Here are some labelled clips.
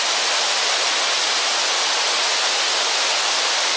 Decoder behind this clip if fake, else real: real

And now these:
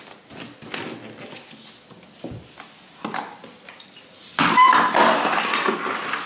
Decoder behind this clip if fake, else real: real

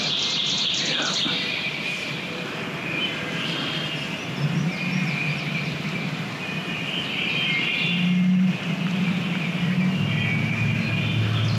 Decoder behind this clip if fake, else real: real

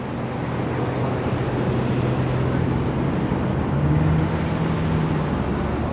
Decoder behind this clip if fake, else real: real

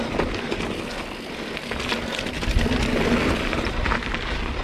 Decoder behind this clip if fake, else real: real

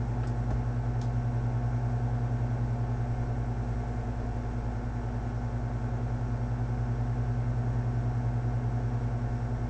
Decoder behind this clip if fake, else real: real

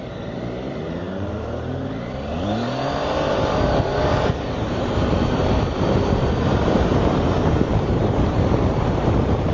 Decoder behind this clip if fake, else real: fake, vocoder, BigVGAN v2